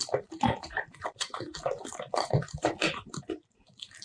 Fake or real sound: fake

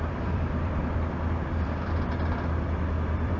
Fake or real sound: fake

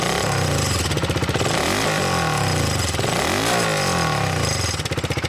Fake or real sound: real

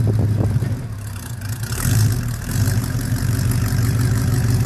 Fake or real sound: fake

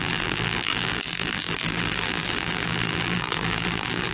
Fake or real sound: fake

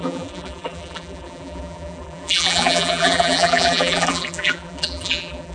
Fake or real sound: fake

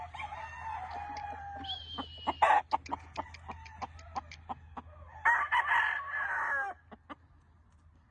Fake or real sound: real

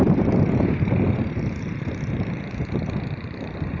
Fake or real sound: fake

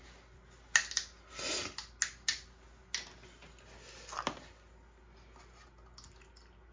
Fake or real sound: real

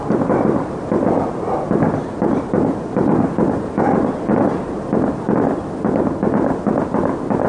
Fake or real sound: real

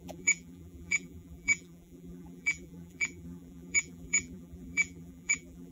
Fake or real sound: fake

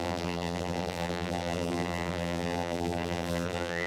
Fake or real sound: fake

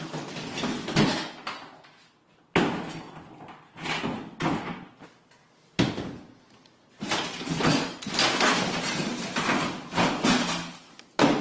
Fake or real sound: real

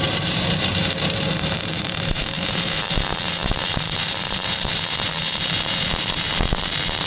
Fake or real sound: fake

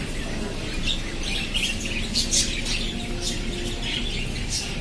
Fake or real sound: real